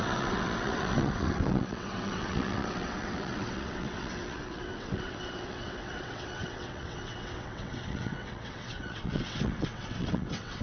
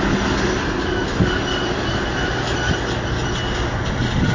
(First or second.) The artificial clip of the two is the first